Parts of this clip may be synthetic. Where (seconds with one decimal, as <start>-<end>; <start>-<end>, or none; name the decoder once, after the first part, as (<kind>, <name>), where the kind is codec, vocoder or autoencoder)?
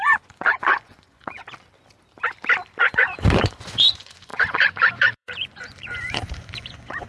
0.0-1.4 (vocoder, Vocos); 2.8-7.1